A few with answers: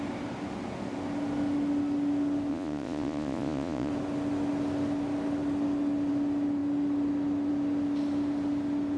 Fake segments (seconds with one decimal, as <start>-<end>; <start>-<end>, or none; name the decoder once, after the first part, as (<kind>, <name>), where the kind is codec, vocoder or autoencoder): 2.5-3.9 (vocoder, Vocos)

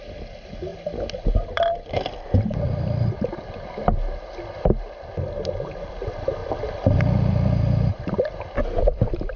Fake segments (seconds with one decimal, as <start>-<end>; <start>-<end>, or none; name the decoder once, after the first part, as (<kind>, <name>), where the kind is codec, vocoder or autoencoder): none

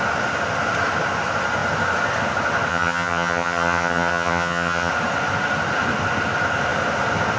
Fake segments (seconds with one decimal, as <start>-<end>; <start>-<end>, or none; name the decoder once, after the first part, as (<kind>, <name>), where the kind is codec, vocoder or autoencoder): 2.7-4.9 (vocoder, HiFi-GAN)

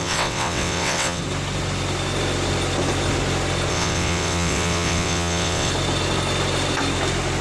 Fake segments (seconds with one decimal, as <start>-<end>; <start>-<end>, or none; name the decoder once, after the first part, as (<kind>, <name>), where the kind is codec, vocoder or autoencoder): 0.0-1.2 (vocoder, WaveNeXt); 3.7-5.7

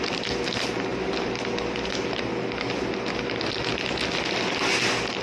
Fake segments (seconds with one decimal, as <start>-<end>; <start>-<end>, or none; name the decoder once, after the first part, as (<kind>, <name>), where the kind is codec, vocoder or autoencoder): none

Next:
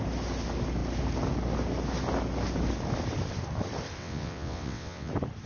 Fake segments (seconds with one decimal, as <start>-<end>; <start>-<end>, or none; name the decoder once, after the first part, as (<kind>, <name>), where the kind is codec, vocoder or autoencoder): 4.0-5.1 (vocoder, WaveNeXt)

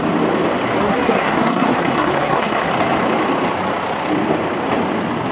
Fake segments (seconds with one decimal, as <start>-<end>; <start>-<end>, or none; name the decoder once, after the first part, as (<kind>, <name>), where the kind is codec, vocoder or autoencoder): 0.8-2.7 (codec, SNAC)